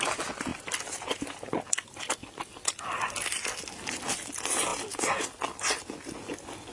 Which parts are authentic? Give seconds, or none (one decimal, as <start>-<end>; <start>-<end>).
0.0-6.7